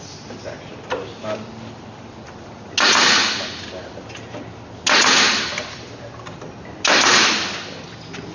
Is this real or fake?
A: real